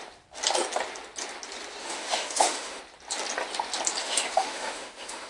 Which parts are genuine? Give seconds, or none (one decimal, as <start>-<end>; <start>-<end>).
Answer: 0.0-1.8; 2.8-4.0